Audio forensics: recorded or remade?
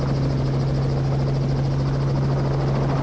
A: recorded